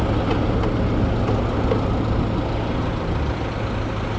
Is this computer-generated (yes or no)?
no